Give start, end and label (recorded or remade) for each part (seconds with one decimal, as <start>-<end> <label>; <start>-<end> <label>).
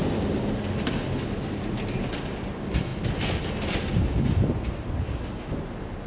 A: 0.0-6.1 recorded